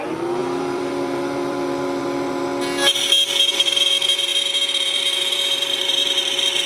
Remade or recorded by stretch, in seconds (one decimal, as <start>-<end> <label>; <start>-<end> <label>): 0.0-2.5 remade; 2.5-3.5 recorded; 3.5-6.7 remade